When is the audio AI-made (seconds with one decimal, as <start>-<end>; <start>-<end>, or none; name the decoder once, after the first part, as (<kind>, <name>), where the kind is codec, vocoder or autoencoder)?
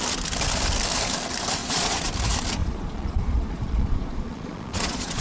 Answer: 1.6-2.1 (vocoder, Vocos); 2.6-5.2